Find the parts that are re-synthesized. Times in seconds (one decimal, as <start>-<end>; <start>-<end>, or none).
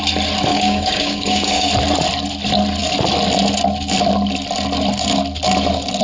0.5-1.7